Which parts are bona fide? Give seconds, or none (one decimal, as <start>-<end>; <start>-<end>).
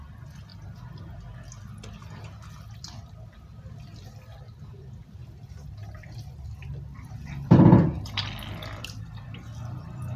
0.5-4.4; 5.2-7.1